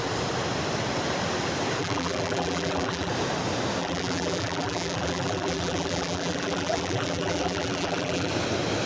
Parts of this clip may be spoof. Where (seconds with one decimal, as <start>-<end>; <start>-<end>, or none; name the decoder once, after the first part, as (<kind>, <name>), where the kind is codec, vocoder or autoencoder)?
1.8-3.1 (vocoder, BigVGAN v2); 3.8-8.3